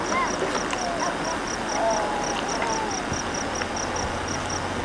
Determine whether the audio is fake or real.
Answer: real